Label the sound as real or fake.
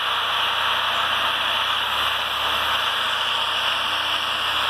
real